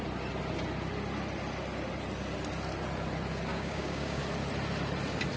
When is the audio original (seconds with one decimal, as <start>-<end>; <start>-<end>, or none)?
0.0-3.5; 4.2-5.4